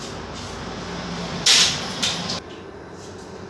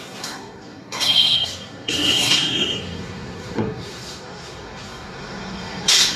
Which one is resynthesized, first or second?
second